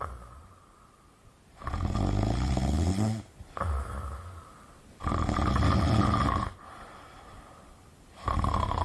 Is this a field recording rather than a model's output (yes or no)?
yes